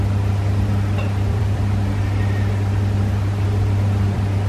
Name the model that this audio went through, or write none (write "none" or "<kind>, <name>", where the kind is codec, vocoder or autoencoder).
vocoder, BigVGAN v2